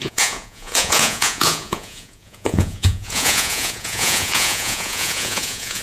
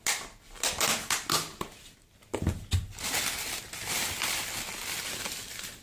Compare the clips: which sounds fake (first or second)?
first